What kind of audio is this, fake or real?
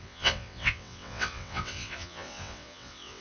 fake